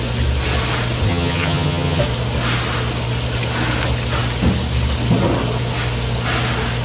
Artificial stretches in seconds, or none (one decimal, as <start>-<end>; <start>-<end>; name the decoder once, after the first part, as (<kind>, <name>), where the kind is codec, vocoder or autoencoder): 1.1-2.0 (vocoder, HiFi-GAN)

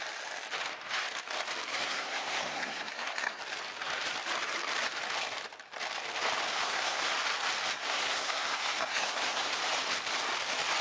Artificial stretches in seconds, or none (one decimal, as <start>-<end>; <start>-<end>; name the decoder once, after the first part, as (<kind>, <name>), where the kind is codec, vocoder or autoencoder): 1.7-3.4 (codec, SNAC); 6.5-7.1; 7.7-9.6

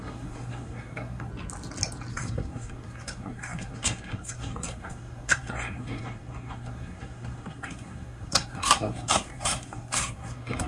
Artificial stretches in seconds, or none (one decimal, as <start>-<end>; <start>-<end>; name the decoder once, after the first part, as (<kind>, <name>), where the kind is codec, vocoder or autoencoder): 0.0-1.3 (codec, SNAC); 2.1-10.7

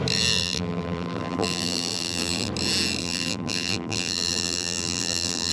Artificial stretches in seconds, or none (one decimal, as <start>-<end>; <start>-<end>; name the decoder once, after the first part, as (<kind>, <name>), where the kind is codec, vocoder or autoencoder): 0.4-2.5 (vocoder, BigVGAN v2); 3.0-5.5

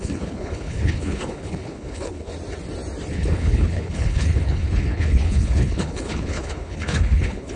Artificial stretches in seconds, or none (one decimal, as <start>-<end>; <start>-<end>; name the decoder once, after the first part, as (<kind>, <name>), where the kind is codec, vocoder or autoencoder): 0.0-2.3 (codec, HILCodec); 3.1-7.6